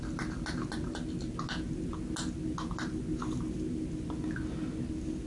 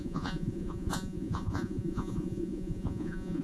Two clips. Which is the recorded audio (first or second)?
first